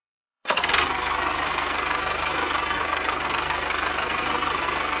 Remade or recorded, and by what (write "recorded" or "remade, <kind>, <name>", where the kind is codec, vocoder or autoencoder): remade, codec, SNAC